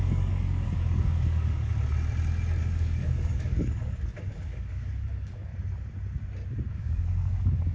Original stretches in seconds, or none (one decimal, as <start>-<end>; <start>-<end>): 1.7-2.6; 5.5-6.7